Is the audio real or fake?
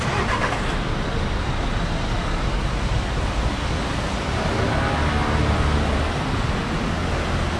real